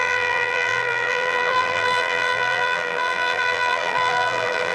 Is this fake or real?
fake